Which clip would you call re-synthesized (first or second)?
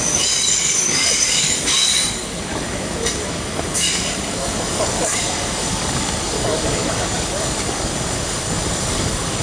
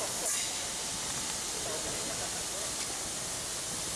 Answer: first